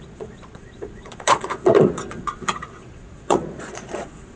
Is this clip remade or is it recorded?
remade